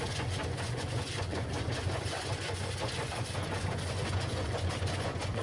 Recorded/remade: remade